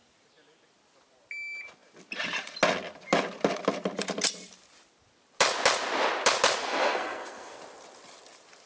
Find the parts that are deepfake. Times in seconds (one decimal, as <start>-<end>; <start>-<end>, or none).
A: 6.6-7.6